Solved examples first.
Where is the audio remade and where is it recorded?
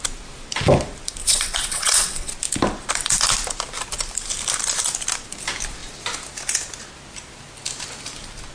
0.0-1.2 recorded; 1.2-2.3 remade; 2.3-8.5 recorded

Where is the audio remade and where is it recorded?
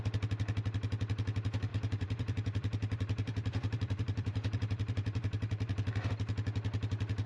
0.0-1.7 recorded; 1.7-6.1 remade; 6.1-7.3 recorded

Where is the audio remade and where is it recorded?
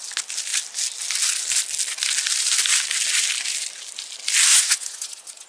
0.0-4.5 recorded; 4.5-5.5 remade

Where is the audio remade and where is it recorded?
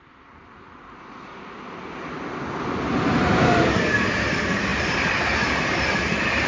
0.0-6.5 recorded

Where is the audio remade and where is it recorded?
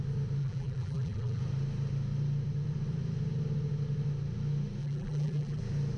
0.0-0.4 recorded; 0.4-1.4 remade; 1.4-4.8 recorded; 4.8-5.6 remade; 5.6-6.0 recorded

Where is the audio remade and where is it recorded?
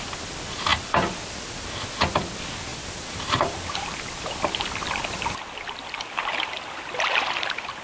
0.0-2.7 recorded; 2.7-7.8 remade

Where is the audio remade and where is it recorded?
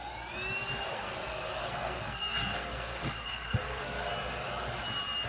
0.0-0.9 recorded; 0.9-4.1 remade; 4.1-5.3 recorded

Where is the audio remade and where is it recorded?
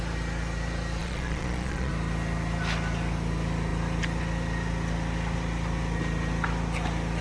0.0-1.0 recorded; 1.0-1.9 remade; 1.9-7.2 recorded